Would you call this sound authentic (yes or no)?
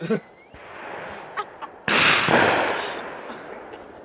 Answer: yes